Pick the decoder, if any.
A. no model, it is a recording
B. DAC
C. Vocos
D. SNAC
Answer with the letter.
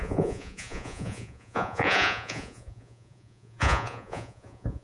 C